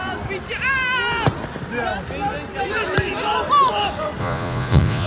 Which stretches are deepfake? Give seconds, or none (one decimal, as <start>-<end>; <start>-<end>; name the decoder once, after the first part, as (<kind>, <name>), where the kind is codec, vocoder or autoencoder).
4.2-5.1 (vocoder, Vocos)